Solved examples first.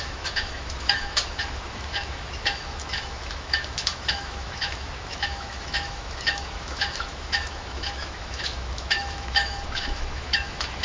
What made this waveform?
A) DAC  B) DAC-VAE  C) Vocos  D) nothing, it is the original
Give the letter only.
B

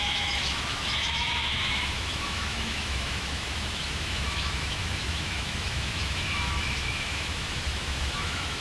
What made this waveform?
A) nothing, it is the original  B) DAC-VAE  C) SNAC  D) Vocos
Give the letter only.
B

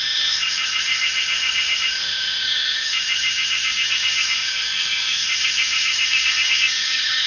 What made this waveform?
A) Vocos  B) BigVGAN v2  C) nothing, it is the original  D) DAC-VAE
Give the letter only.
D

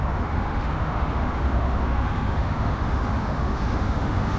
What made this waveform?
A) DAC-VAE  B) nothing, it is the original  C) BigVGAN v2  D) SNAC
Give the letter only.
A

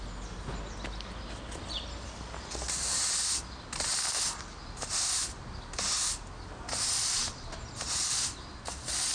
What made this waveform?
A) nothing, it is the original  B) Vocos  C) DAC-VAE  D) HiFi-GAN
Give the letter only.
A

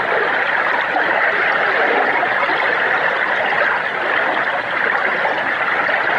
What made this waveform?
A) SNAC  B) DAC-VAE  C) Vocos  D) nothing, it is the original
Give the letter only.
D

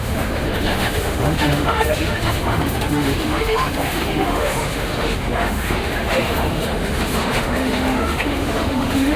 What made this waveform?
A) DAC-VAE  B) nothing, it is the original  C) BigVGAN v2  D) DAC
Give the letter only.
A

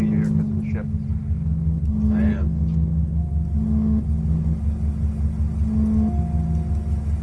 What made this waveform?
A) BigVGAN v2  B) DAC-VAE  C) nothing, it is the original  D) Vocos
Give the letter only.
C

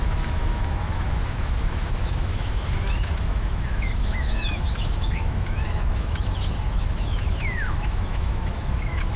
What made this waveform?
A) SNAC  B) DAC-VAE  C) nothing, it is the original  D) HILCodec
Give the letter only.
B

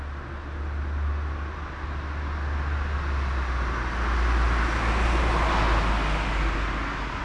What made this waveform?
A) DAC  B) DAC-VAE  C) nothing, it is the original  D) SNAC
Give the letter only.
C